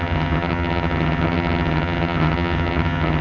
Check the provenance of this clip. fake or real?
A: fake